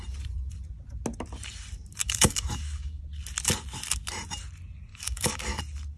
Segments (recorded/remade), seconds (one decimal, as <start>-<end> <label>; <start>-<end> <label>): 0.0-2.0 recorded; 2.0-3.0 remade; 3.0-4.9 recorded; 4.9-5.6 remade; 5.6-6.0 recorded